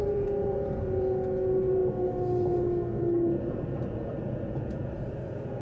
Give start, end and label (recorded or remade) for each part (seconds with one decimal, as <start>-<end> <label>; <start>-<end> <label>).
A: 0.0-1.8 remade; 1.8-3.4 recorded; 3.4-5.6 remade